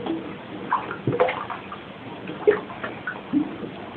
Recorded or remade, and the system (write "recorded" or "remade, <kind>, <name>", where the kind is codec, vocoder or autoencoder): recorded